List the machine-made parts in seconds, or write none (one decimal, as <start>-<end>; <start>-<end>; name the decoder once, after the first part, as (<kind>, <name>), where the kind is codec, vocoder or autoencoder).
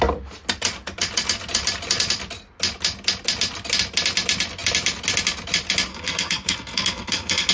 5.9-7.5 (codec, SNAC)